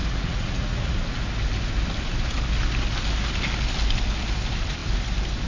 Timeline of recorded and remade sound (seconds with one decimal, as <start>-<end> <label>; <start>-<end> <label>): 0.0-0.9 remade; 0.9-5.5 recorded